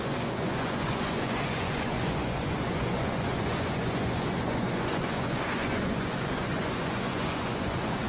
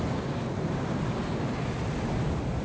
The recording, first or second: second